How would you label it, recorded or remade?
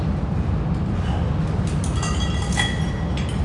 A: recorded